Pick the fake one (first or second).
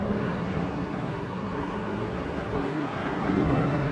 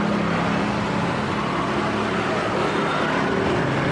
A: first